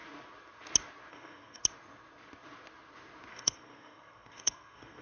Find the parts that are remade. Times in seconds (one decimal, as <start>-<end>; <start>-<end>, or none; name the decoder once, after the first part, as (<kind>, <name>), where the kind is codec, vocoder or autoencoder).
1.1-1.6 (codec, SNAC); 3.3-5.0